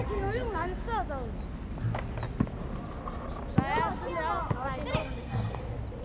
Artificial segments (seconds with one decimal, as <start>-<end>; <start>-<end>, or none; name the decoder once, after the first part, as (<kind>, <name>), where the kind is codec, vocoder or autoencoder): 5.0-5.6 (codec, SNAC)